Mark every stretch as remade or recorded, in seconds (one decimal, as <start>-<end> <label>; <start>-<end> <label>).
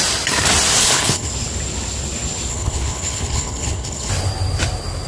0.0-0.8 recorded; 0.8-1.3 remade; 1.3-2.5 recorded; 2.5-4.1 remade; 4.1-5.1 recorded